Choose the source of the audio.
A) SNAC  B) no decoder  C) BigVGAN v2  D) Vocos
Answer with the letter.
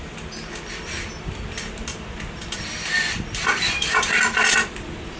B